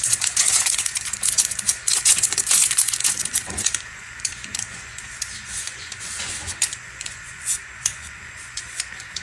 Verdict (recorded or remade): remade